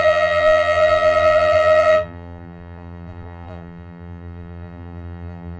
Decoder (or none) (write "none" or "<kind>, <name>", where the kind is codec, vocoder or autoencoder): vocoder, BigVGAN v2